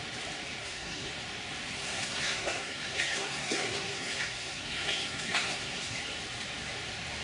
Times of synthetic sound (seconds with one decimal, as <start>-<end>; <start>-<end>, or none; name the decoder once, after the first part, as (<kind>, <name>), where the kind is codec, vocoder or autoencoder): 0.6-1.1 (codec, SNAC); 1.7-6.0